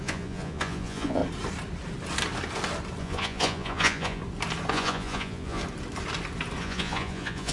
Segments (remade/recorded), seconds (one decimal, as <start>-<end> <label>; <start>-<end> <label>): 0.0-1.2 remade; 1.2-3.0 recorded; 3.0-4.2 remade; 4.2-4.7 recorded; 4.7-5.6 remade; 5.6-6.6 recorded; 6.6-7.5 remade